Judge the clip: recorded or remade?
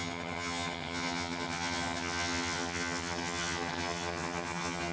remade